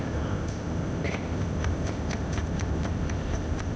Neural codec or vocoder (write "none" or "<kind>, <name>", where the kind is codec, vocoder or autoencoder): codec, ZipCodec